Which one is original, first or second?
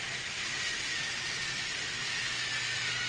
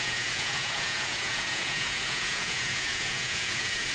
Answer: first